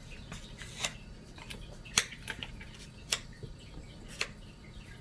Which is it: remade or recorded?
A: recorded